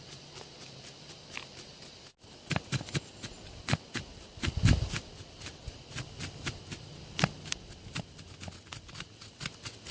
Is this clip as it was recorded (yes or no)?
yes